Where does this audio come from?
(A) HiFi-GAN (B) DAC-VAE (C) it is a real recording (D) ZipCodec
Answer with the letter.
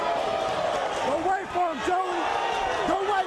C